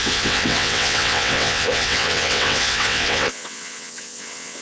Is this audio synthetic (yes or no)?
yes